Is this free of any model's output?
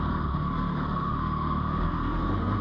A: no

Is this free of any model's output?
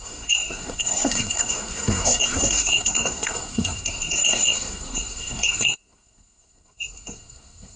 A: no